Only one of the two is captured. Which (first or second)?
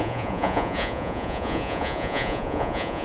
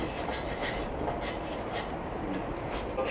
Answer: second